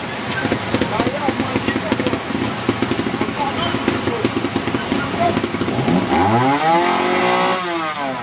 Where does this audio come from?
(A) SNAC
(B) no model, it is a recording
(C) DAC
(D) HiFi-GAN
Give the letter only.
B